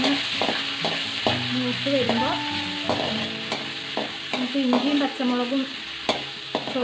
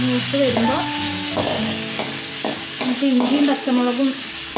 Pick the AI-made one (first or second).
second